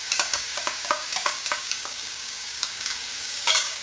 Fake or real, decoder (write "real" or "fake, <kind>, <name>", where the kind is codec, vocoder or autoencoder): fake, codec, DAC